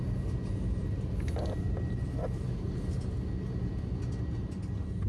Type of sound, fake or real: real